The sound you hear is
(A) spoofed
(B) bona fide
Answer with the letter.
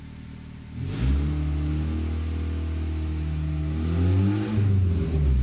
B